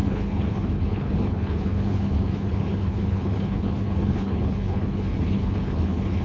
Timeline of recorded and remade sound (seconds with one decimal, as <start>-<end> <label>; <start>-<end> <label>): 0.0-6.2 remade